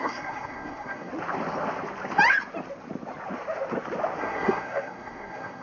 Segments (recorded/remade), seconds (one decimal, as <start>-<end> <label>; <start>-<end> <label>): 0.0-1.1 remade; 1.1-4.2 recorded; 4.2-5.6 remade